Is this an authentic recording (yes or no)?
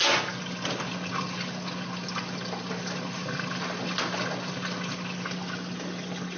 yes